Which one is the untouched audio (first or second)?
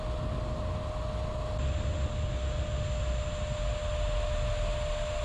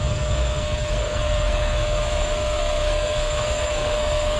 first